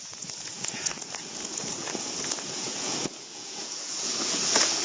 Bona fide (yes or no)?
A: no